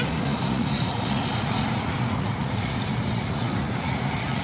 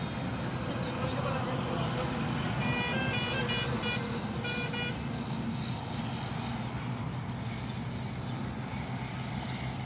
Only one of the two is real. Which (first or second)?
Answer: second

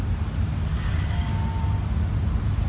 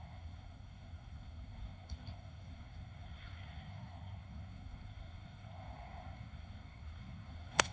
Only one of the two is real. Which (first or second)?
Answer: first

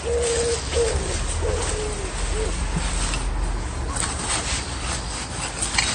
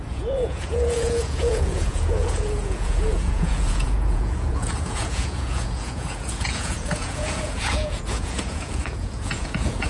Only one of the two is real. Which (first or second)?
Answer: first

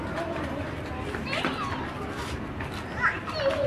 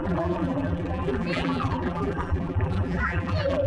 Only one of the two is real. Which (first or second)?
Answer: first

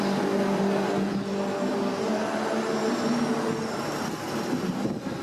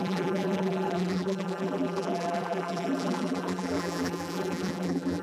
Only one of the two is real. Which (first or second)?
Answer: first